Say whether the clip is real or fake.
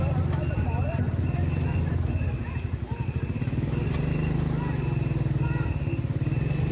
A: real